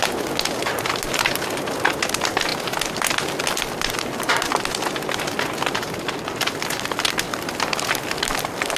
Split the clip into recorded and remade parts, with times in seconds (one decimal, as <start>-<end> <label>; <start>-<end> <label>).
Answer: 0.0-8.8 recorded